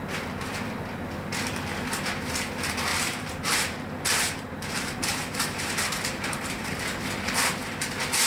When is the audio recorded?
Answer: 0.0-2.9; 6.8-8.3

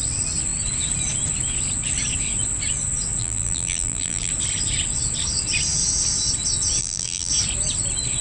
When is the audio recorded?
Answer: 0.0-3.2; 4.3-6.8; 7.3-8.2

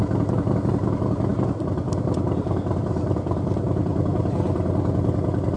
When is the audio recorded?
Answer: 0.0-1.3; 4.7-5.6

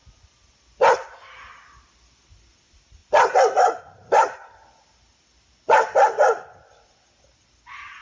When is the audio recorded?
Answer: 0.0-8.0